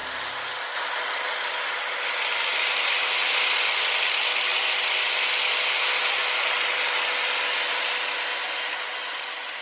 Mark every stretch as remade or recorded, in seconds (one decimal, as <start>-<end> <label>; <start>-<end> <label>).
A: 0.0-1.8 remade; 1.8-2.5 recorded; 2.5-3.6 remade; 3.6-9.6 recorded